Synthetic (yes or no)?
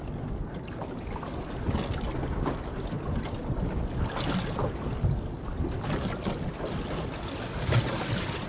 no